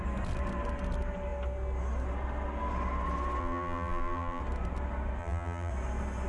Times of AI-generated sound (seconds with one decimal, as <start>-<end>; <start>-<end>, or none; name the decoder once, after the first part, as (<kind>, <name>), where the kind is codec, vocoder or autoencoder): 3.4-4.4 (vocoder, BigVGAN v2); 5.2-5.7